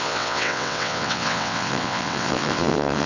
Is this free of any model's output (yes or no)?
no